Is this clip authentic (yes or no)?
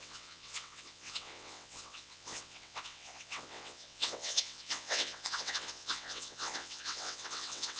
no